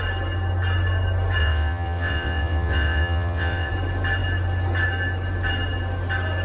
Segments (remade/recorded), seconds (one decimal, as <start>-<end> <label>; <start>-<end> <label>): 0.0-1.4 recorded; 1.4-3.7 remade; 3.7-6.4 recorded